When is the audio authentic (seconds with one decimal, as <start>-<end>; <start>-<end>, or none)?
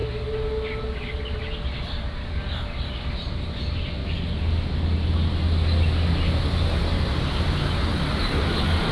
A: 0.0-8.9